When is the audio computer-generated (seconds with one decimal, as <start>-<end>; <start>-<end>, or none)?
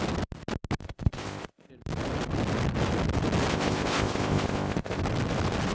0.8-1.7; 3.5-5.0